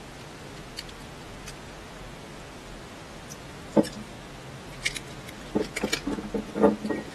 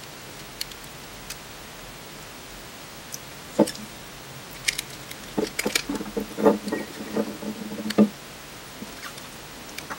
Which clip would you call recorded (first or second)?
first